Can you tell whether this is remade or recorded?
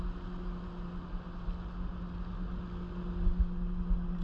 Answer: recorded